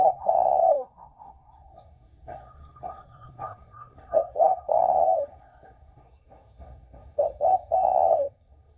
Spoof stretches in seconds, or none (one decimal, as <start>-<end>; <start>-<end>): 0.0-8.8